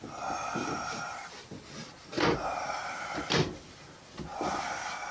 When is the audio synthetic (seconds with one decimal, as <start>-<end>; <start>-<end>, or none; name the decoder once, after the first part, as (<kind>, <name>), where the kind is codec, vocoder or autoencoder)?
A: 0.6-1.3 (vocoder, BigVGAN v2); 2.0-3.3